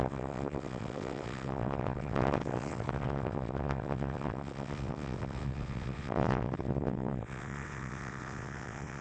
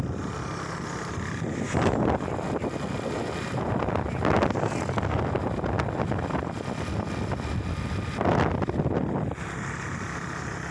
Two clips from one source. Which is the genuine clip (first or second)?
second